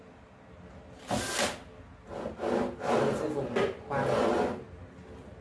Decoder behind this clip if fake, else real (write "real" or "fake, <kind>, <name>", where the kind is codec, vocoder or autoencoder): real